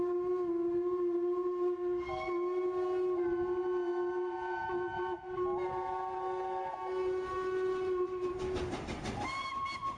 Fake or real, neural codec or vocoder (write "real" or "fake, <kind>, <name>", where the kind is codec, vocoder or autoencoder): real